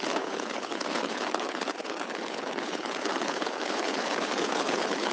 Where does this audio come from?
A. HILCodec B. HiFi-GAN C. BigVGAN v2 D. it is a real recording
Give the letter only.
A